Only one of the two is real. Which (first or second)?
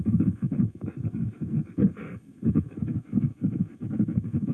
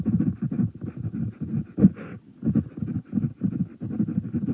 second